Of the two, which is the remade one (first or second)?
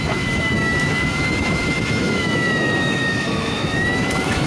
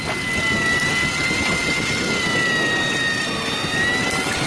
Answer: first